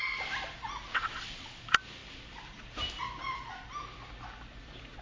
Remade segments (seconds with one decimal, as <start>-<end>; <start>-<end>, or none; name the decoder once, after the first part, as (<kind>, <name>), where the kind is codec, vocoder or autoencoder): 0.9-1.6 (vocoder, WaveNeXt)